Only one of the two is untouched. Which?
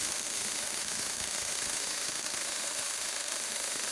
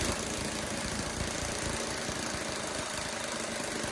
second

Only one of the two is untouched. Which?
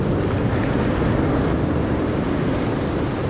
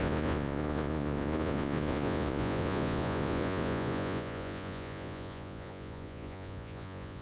first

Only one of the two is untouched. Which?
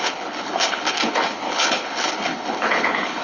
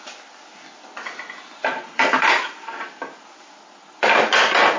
second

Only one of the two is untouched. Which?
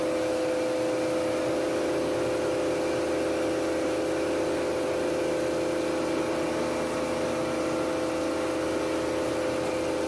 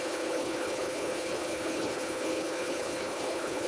first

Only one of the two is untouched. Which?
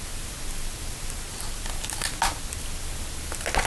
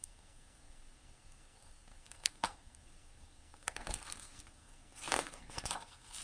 first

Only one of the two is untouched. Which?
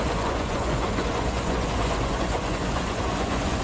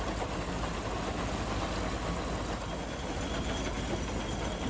second